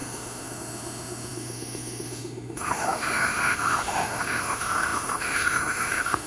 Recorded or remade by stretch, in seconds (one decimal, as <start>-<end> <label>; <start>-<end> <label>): 0.0-6.3 remade